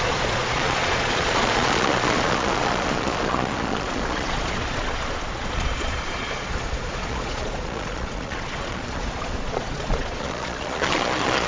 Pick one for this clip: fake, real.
fake